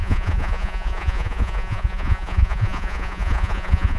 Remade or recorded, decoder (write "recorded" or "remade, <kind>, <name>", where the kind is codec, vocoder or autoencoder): remade, vocoder, Vocos